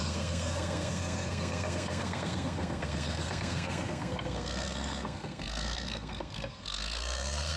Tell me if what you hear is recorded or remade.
remade